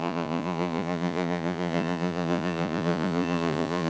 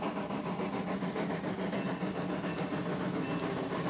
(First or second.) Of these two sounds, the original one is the second